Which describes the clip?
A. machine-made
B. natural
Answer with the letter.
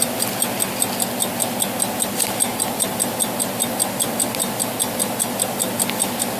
B